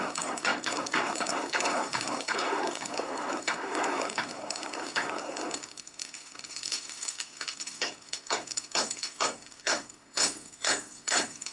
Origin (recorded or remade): remade